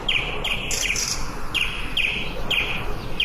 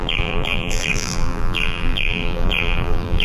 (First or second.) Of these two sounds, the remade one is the second